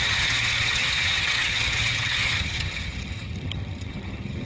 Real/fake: fake